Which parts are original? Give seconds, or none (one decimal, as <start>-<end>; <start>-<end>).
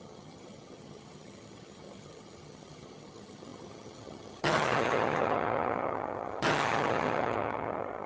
none